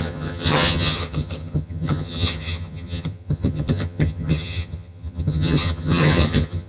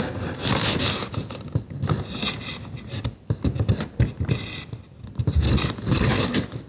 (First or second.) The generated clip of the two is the first